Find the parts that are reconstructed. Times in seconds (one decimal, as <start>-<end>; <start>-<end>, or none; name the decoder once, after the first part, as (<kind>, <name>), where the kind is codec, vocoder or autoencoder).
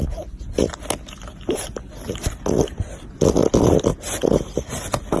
none